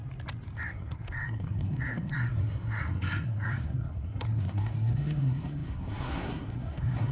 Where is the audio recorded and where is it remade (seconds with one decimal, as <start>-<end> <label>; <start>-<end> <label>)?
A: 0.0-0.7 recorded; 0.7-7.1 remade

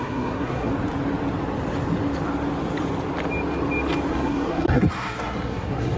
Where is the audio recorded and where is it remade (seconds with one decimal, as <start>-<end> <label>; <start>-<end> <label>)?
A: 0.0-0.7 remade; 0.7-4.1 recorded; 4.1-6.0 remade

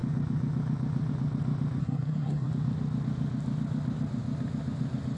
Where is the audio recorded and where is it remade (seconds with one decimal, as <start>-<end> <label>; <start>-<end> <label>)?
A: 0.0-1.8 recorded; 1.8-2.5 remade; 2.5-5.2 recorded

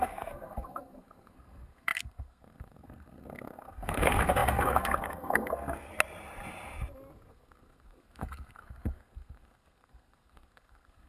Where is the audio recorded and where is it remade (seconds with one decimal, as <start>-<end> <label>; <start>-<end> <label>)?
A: 0.0-5.9 remade; 5.9-7.3 recorded; 7.3-11.1 remade

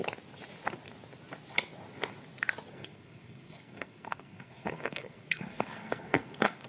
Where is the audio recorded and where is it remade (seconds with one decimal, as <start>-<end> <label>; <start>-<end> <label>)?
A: 0.0-2.7 recorded; 2.7-6.7 remade

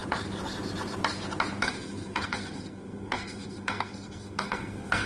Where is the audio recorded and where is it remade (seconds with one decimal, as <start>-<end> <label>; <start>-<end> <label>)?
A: 0.0-1.6 recorded; 1.6-5.1 remade

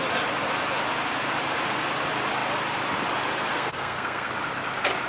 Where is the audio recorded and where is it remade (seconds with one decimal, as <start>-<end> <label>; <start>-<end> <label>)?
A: 0.0-3.5 recorded; 3.5-4.3 remade; 4.3-5.1 recorded

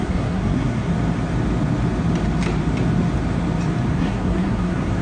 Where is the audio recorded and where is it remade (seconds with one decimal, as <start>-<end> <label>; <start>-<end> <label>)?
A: 0.0-0.9 remade; 0.9-3.9 recorded; 3.9-5.0 remade